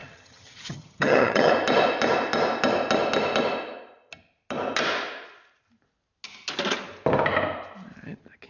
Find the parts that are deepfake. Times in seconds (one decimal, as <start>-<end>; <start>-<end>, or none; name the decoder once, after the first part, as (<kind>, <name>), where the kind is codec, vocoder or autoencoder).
0.0-1.5 (vocoder, HiFi-GAN)